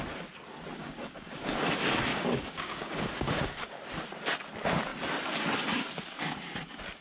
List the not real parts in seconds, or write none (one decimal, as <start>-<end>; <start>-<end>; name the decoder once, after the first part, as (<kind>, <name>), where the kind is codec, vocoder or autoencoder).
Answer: 0.8-1.5 (codec, DAC); 2.1-3.8

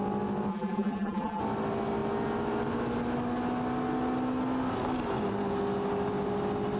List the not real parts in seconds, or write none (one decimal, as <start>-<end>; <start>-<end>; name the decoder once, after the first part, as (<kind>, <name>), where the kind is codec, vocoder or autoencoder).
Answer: 0.5-1.4 (vocoder, BigVGAN v2)